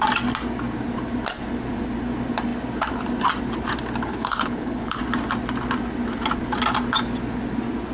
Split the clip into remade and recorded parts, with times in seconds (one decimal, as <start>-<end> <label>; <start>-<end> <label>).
0.0-4.1 recorded; 4.1-5.0 remade; 5.0-7.9 recorded